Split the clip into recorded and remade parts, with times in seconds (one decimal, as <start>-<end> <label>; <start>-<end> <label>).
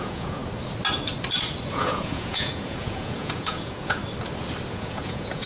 0.0-0.4 remade; 0.4-1.7 recorded; 1.7-4.0 remade; 4.0-4.7 recorded; 4.7-5.5 remade